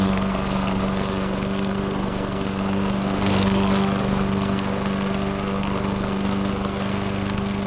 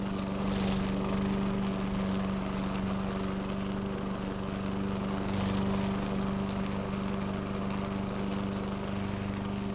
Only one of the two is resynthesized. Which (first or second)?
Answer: first